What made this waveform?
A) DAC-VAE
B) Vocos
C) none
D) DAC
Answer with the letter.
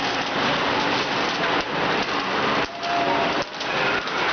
C